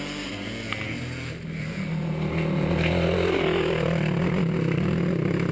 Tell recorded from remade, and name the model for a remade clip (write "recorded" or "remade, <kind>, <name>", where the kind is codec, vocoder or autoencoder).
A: recorded